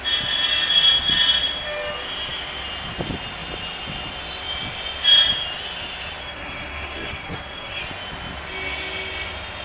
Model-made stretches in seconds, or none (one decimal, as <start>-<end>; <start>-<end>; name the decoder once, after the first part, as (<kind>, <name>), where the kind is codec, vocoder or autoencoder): 6.2-7.8 (codec, SNAC)